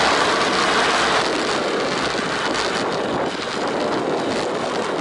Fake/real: real